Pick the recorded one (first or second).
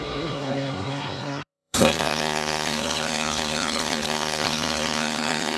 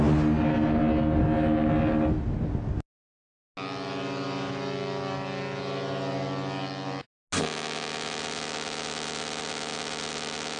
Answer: second